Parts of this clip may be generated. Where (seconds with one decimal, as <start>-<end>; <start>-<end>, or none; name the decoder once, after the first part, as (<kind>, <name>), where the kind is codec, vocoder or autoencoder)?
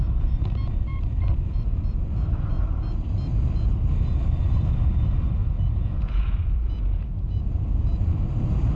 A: 0.9-1.8 (vocoder, Vocos); 5.4-8.1